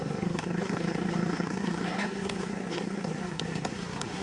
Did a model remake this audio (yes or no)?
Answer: yes